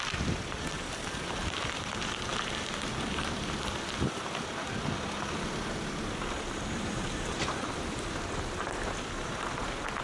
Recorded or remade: remade